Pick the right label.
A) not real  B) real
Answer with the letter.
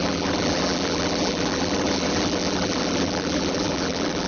A